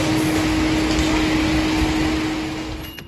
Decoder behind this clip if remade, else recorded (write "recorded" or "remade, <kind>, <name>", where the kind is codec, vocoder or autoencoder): recorded